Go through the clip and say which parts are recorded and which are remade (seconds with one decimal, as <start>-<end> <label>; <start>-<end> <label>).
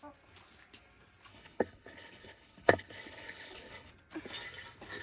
0.0-1.3 recorded; 1.3-3.9 remade; 3.9-5.0 recorded